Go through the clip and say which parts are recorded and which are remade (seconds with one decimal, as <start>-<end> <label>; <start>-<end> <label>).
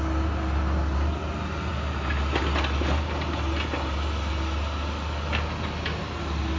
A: 0.0-6.6 recorded